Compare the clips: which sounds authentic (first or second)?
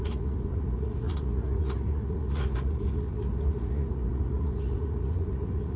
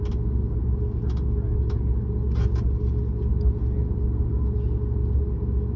second